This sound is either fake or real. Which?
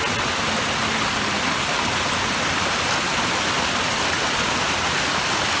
real